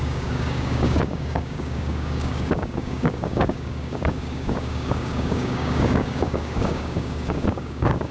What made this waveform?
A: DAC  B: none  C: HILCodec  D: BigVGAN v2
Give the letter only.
A